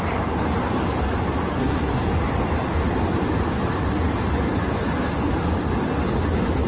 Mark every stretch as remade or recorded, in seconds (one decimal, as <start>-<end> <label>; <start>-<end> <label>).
0.0-1.5 recorded; 1.5-2.0 remade; 2.0-6.7 recorded

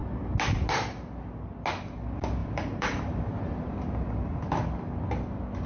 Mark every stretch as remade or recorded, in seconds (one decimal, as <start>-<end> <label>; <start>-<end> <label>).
0.0-2.4 recorded; 2.4-4.4 remade; 4.4-5.7 recorded

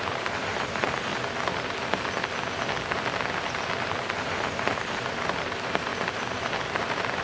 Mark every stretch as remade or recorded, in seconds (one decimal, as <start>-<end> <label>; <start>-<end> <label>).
0.0-1.1 remade; 1.1-3.8 recorded; 3.8-7.2 remade